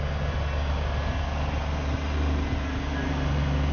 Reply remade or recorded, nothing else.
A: recorded